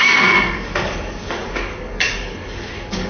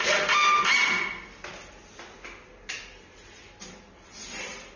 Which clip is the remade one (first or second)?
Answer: first